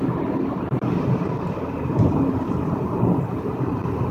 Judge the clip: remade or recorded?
remade